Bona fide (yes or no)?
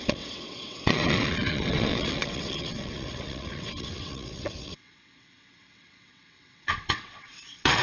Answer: no